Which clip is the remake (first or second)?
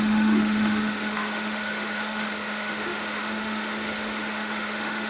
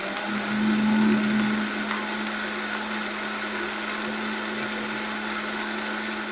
first